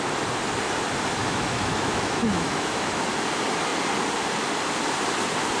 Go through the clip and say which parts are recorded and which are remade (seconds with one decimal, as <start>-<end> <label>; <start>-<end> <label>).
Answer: 0.0-1.2 recorded; 1.2-3.0 remade; 3.0-5.6 recorded